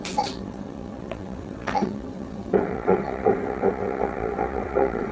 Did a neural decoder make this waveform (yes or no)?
yes